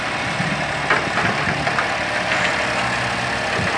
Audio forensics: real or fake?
real